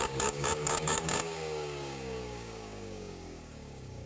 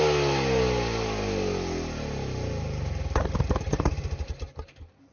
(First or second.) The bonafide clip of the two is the second